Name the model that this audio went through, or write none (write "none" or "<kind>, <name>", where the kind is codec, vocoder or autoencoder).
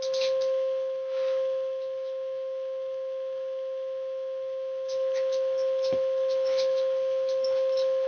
autoencoder, DAC-VAE